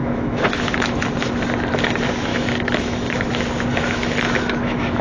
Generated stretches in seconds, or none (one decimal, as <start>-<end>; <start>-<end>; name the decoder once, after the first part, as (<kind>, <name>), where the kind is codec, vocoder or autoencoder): 0.0-1.0 (autoencoder, DAC-VAE); 2.3-3.3; 3.7-5.0